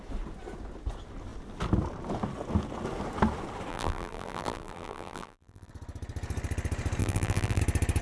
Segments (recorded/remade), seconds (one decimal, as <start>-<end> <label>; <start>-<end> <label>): 0.0-3.7 recorded; 3.7-5.7 remade; 5.7-7.0 recorded; 7.0-7.6 remade; 7.6-8.0 recorded